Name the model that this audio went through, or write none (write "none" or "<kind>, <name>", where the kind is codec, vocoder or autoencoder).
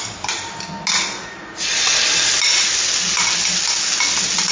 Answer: none